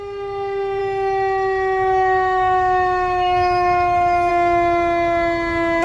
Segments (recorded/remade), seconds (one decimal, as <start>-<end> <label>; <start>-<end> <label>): 0.0-0.8 recorded; 0.8-4.3 remade; 4.3-5.8 recorded